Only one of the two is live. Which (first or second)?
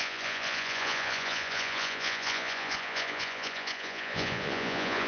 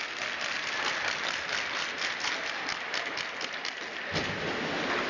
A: second